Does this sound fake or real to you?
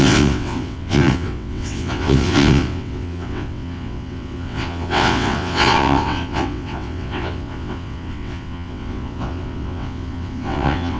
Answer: fake